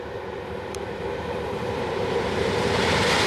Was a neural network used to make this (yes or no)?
yes